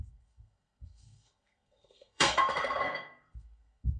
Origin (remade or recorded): remade